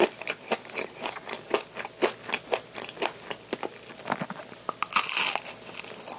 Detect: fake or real real